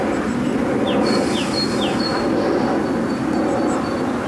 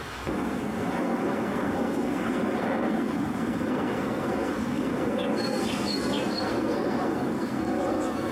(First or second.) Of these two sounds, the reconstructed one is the second